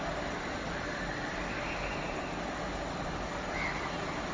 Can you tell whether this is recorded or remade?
recorded